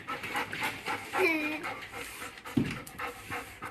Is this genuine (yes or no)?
yes